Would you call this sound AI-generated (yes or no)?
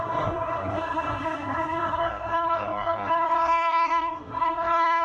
yes